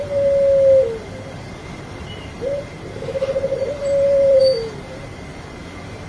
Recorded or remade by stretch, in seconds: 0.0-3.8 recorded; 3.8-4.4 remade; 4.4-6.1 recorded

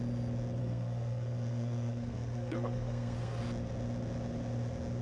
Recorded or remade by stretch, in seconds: 0.0-0.6 recorded; 0.6-3.4 remade; 3.4-5.0 recorded

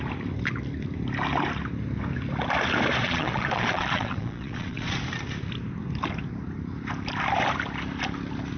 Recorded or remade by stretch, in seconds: 0.0-3.0 recorded; 3.0-5.0 remade; 5.0-8.6 recorded

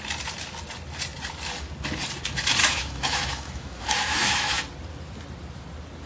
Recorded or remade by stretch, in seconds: 0.0-2.6 recorded; 2.6-4.6 remade; 4.6-6.1 recorded

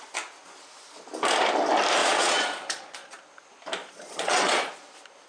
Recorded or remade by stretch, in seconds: 0.0-2.0 recorded; 2.0-3.2 remade; 3.2-3.8 recorded; 3.8-4.7 remade; 4.7-5.3 recorded